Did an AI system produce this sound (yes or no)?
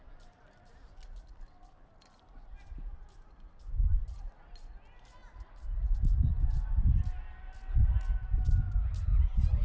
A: no